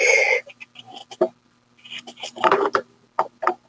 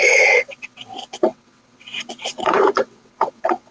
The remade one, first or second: second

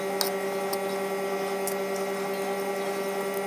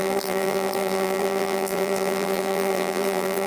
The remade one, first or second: second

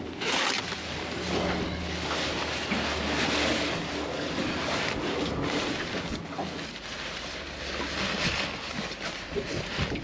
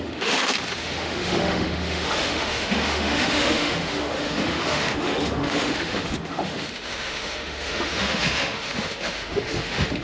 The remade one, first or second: second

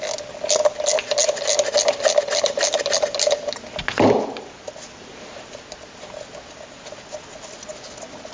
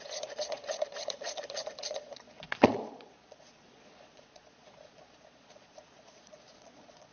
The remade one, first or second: second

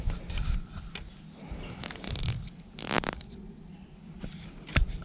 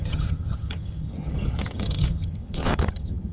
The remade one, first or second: second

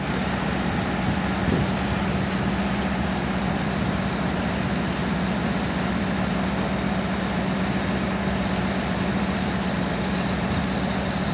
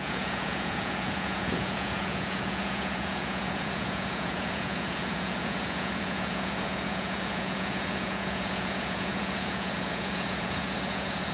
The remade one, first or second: second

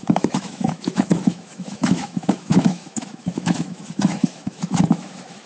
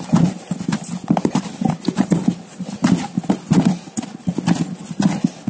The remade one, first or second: first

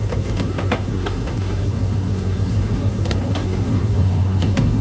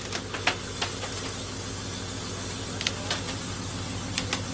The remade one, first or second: first